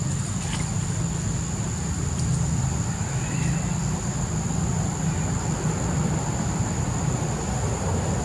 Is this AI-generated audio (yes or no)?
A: no